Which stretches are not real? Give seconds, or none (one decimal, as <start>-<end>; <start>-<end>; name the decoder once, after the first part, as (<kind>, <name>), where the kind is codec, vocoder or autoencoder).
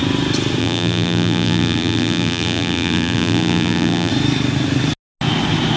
0.6-4.1 (vocoder, BigVGAN v2)